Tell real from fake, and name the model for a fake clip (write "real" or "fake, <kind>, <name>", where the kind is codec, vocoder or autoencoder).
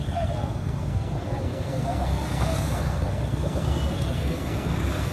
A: fake, codec, SNAC